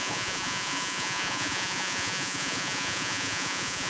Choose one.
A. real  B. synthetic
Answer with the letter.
B